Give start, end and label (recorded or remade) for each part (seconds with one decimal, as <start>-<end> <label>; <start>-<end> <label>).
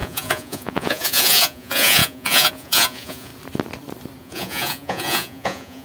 0.0-3.3 remade; 3.3-4.2 recorded; 4.2-5.8 remade